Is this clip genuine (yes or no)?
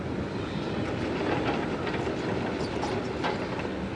yes